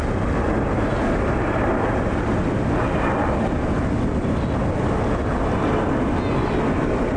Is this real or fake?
real